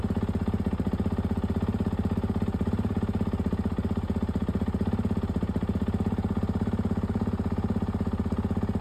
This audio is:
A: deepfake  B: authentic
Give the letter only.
B